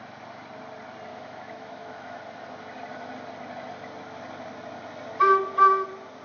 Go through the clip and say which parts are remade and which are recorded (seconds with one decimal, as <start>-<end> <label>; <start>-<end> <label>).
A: 0.0-1.1 recorded; 1.1-2.2 remade; 2.2-6.2 recorded